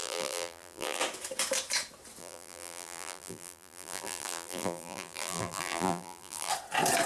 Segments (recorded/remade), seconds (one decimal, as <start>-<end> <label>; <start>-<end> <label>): 0.0-1.0 remade; 1.0-2.2 recorded; 2.2-6.5 remade; 6.5-7.1 recorded

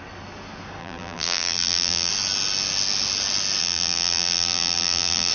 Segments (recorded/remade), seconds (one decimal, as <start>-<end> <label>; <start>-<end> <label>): 0.0-0.8 recorded; 0.8-2.1 remade; 2.1-3.6 recorded; 3.6-5.3 remade